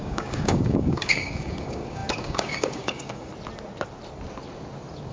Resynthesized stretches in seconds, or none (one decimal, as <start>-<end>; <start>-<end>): 0.0-3.3

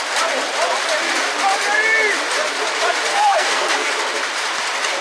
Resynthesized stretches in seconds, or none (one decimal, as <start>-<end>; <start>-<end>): 3.1-3.9

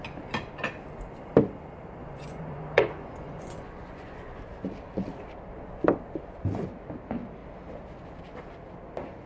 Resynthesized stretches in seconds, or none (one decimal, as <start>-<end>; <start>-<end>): 2.0-4.4

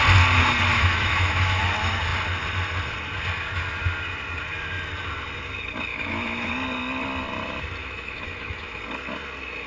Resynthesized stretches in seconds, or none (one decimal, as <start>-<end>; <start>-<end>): 0.7-1.6; 5.9-6.5; 7.8-8.8

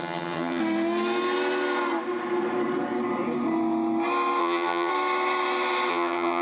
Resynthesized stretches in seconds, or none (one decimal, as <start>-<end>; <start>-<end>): 0.0-0.6; 4.4-4.9; 5.9-6.4